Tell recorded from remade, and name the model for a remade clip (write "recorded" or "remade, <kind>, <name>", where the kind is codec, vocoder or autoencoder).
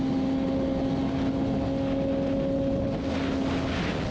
recorded